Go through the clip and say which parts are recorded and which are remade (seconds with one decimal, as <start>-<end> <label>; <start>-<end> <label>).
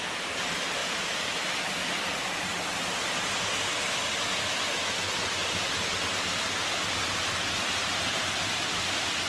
0.0-9.3 recorded